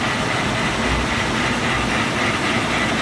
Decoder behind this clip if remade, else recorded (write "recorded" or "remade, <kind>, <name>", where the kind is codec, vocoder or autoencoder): recorded